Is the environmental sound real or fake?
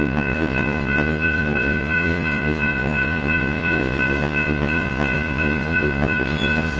fake